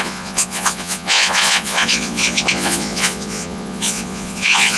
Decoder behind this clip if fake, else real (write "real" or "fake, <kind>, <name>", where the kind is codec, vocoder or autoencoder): fake, vocoder, Vocos